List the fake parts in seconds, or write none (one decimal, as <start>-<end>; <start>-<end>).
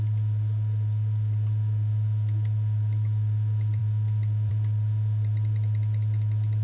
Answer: none